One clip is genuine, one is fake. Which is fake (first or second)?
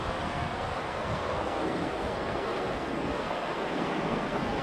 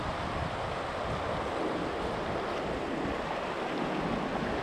first